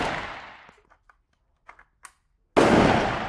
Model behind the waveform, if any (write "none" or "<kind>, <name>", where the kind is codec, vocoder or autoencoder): none